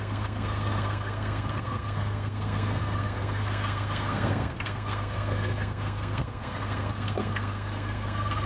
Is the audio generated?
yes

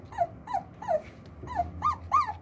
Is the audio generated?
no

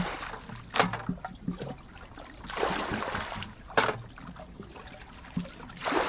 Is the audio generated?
no